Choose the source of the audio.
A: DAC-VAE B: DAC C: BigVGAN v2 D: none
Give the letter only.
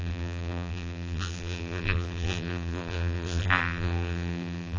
C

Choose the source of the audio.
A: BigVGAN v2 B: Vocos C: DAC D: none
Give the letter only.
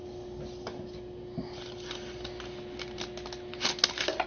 D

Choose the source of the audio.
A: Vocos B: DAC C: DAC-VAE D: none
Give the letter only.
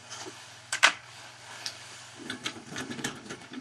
B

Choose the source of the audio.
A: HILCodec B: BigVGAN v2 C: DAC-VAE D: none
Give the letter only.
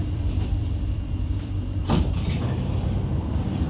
B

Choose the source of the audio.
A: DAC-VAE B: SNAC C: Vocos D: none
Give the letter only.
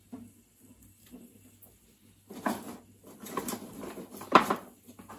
D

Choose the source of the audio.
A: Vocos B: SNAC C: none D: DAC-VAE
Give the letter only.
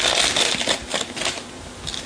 C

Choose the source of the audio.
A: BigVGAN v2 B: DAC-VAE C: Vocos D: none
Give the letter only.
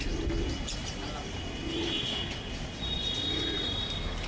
D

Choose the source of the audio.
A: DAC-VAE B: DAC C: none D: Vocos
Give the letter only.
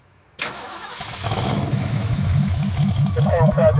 A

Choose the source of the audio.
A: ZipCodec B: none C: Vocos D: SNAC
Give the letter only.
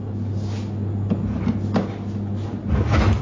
B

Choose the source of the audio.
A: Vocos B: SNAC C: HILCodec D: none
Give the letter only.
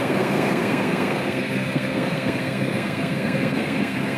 B